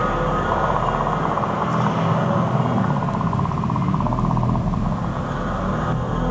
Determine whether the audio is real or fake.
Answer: real